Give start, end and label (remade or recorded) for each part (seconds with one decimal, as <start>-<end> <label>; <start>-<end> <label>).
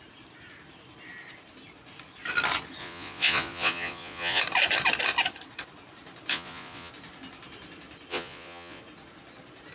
0.0-2.8 recorded; 2.8-4.4 remade; 4.4-6.3 recorded; 6.3-6.9 remade; 6.9-8.1 recorded; 8.1-8.8 remade; 8.8-9.7 recorded